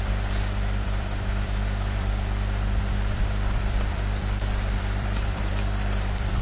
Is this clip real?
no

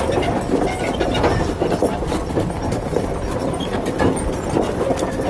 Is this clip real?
yes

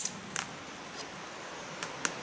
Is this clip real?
yes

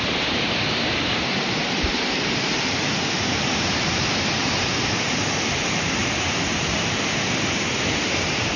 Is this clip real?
no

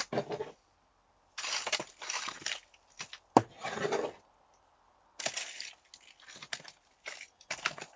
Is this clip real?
yes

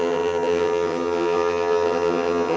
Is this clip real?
no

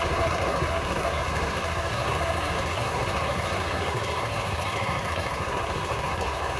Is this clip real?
no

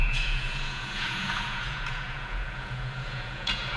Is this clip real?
no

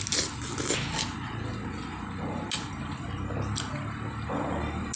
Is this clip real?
yes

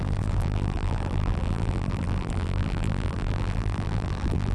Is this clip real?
no